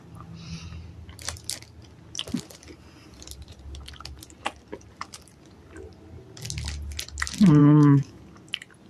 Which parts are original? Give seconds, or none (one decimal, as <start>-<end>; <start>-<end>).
0.0-7.6; 8.2-8.9